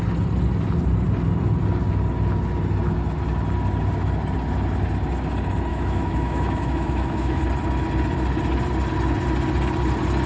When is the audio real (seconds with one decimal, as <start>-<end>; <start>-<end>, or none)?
0.0-5.7; 7.4-10.3